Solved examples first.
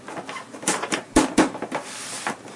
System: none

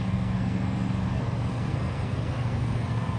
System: codec, SNAC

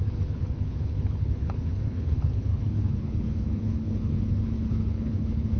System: codec, HILCodec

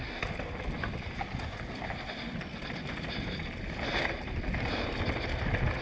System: none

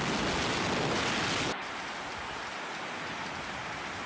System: none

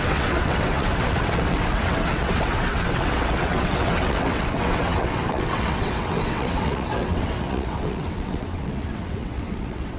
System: vocoder, WaveNeXt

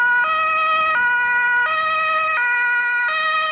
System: none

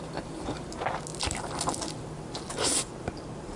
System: none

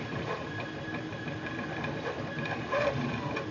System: vocoder, BigVGAN v2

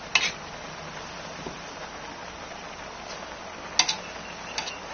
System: none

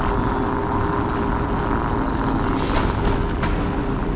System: none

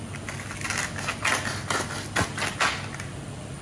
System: none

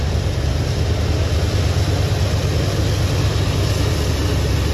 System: none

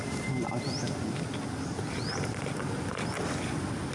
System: none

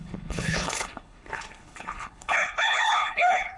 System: codec, HILCodec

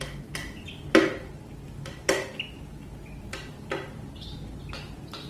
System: vocoder, BigVGAN v2